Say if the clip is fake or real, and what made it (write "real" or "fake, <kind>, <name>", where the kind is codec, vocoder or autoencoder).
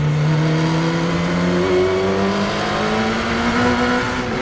real